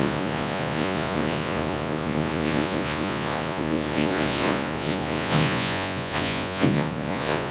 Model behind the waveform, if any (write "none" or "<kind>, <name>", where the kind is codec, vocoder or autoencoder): vocoder, Vocos